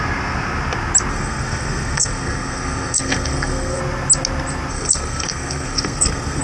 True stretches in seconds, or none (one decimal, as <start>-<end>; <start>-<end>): 0.0-1.1; 3.8-4.7